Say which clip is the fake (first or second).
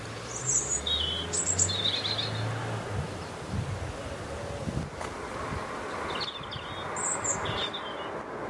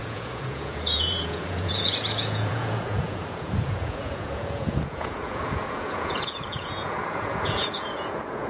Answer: second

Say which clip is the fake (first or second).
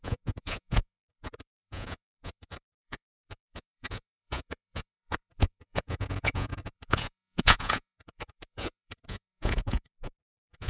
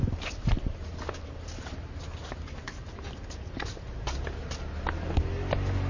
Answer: first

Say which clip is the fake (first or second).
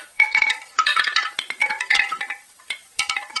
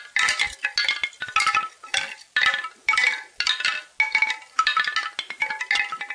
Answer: first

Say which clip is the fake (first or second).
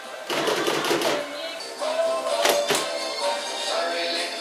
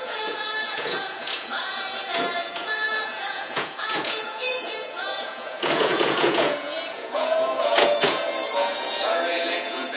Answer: second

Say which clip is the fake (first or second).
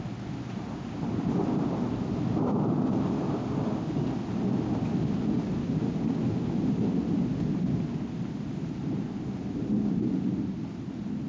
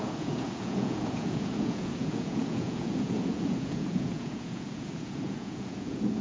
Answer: second